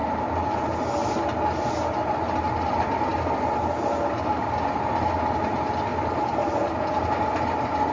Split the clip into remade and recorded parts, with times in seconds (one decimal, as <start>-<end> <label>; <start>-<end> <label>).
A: 0.0-7.9 recorded